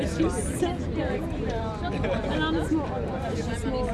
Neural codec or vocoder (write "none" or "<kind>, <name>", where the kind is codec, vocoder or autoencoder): none